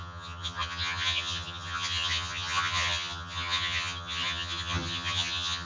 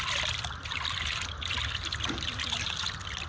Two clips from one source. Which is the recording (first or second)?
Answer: second